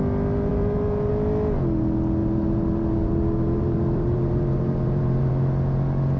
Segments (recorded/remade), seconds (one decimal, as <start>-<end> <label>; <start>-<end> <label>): 0.0-0.5 recorded; 0.5-1.1 remade; 1.1-2.2 recorded; 2.2-5.3 remade; 5.3-6.2 recorded